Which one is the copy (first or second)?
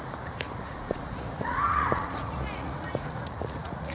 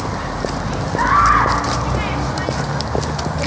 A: first